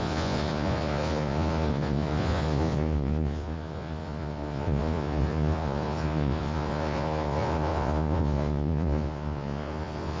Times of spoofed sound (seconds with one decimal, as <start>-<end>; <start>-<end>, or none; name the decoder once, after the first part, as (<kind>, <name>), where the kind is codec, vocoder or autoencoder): 0.0-10.2 (vocoder, Vocos)